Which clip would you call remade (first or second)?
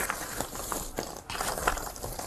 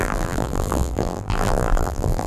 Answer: second